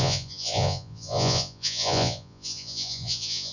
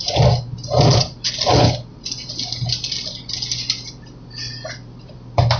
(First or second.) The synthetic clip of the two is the first